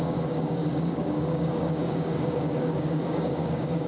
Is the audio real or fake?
fake